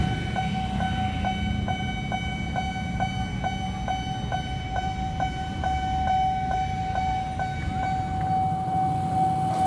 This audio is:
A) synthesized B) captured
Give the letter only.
B